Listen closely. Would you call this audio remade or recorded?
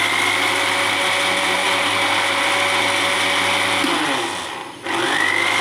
recorded